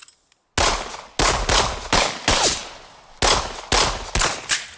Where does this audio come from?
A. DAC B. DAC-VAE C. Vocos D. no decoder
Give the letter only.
D